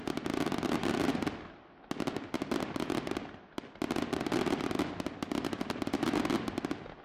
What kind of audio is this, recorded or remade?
recorded